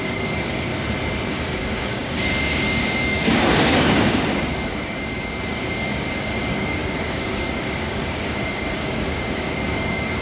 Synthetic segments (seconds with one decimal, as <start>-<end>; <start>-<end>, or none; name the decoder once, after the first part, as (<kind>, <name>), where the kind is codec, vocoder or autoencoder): 0.0-0.7 (codec, DAC); 1.3-10.2